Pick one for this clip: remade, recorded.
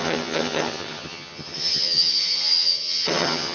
remade